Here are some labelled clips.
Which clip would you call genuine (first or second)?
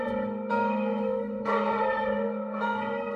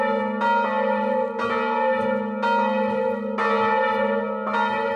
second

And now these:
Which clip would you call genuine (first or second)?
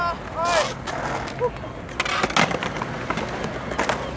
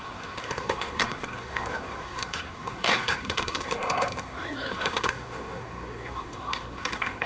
first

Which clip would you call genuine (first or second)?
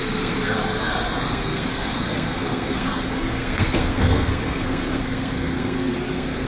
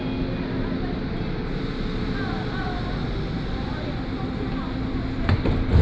second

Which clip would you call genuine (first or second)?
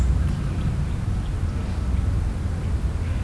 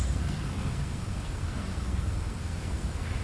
first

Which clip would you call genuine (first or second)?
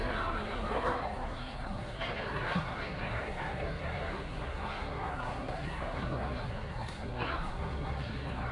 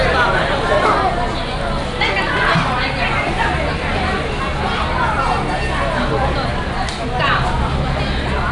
second